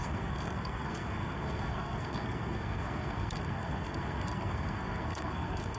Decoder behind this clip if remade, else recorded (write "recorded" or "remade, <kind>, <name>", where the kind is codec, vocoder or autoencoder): remade, codec, SNAC